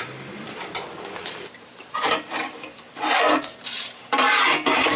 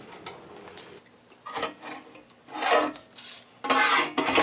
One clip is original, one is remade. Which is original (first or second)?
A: second